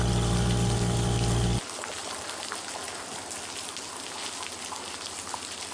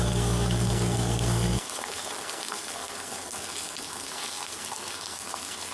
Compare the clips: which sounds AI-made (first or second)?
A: second